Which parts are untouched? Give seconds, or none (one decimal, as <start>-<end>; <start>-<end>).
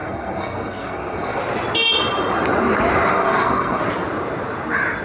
1.4-3.1; 3.8-5.0